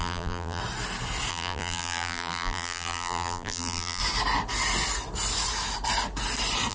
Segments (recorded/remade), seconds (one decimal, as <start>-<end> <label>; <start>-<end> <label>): 0.0-0.6 remade; 0.6-1.3 recorded; 1.3-4.0 remade; 4.0-6.7 recorded